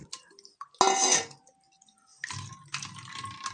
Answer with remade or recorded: recorded